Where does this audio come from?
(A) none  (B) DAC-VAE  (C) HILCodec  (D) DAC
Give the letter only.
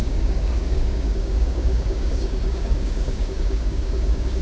D